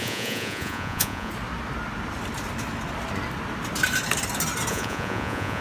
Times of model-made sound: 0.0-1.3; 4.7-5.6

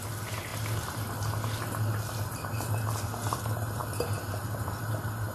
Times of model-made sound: none

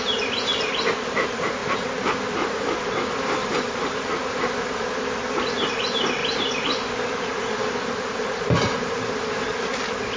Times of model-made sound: 1.6-5.7; 6.2-7.1

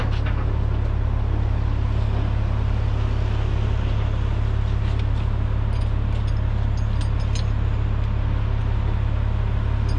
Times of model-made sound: none

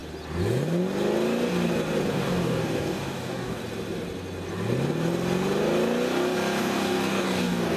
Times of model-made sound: 2.1-3.6; 6.6-7.8

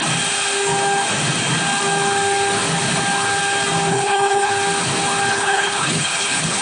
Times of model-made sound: 3.9-4.5; 5.3-6.6

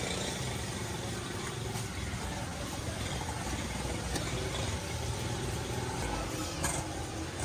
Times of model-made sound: none